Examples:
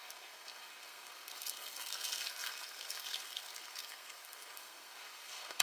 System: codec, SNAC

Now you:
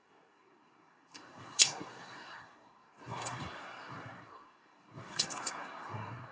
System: codec, SNAC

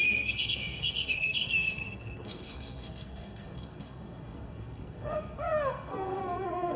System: codec, SNAC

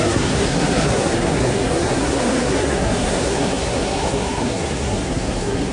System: codec, SNAC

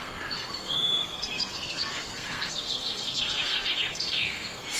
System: codec, SNAC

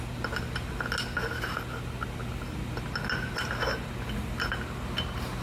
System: none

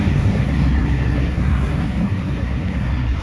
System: codec, SNAC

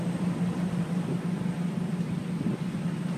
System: none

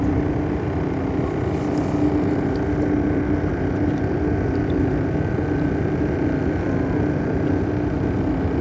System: none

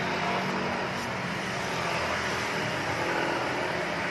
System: none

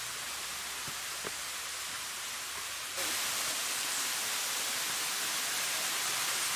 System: none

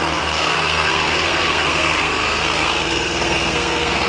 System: codec, SNAC